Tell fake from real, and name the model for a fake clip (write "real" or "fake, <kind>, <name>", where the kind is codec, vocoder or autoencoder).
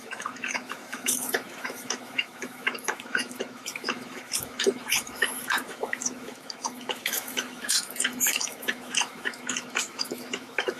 fake, autoencoder, DAC-VAE